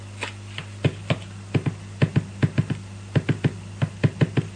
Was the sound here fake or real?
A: real